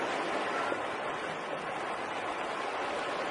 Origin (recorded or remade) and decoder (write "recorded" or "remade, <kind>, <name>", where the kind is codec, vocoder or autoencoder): recorded